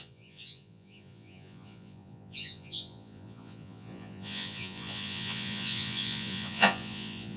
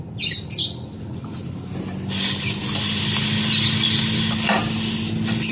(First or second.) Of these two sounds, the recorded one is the second